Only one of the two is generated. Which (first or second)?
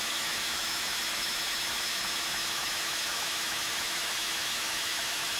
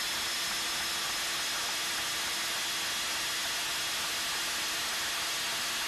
first